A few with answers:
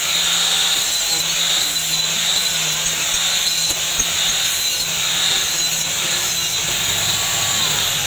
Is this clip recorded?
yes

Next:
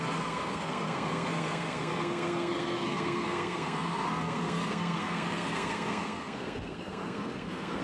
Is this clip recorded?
no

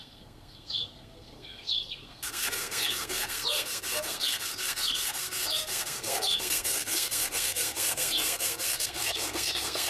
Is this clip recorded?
no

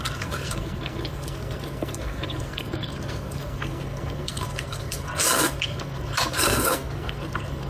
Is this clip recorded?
no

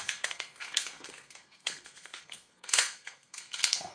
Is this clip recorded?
no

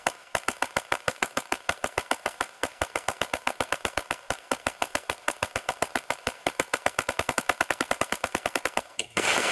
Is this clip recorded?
no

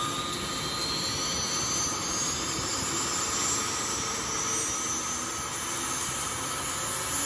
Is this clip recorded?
yes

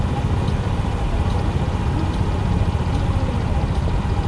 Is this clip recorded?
yes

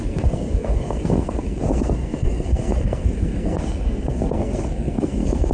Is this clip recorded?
no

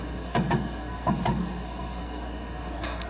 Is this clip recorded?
no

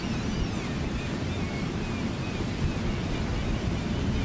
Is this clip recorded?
yes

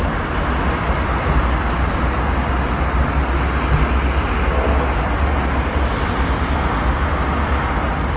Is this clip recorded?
yes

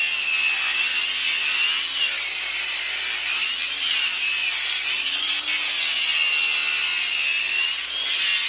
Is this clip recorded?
yes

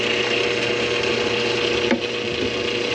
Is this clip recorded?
yes